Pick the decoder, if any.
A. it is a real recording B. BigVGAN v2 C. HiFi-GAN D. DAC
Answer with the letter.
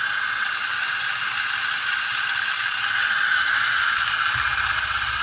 A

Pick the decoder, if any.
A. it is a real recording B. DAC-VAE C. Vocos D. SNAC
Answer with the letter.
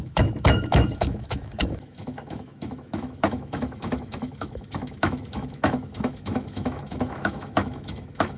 B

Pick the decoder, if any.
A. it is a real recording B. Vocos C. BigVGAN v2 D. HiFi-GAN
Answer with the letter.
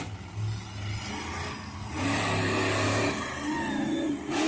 A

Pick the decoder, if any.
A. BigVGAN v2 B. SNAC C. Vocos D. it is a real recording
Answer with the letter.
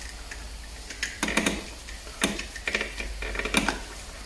D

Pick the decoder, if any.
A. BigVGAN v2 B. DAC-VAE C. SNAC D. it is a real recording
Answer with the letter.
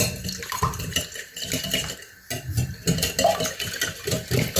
D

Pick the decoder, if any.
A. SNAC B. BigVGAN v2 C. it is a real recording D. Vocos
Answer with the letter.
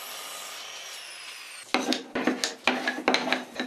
C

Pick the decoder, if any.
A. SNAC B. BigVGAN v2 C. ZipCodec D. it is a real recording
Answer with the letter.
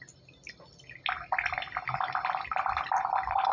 D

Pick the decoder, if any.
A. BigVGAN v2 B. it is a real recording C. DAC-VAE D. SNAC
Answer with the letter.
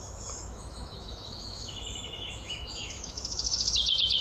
C